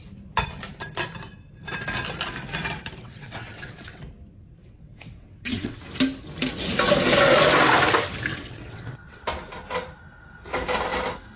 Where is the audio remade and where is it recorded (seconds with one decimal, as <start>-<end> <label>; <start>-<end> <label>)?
0.0-3.0 recorded; 3.0-4.0 remade; 4.0-4.6 recorded; 4.6-5.8 remade; 5.8-8.3 recorded; 8.3-9.2 remade; 9.2-11.4 recorded